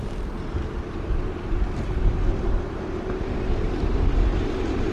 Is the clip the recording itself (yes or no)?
no